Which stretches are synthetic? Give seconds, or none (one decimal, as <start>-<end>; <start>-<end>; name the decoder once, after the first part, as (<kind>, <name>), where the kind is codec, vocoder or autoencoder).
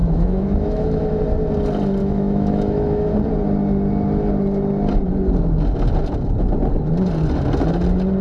0.0-1.2 (autoencoder, DAC-VAE); 2.0-3.1